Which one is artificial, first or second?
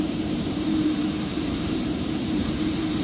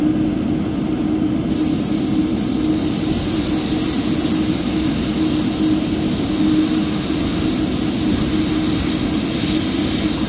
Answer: first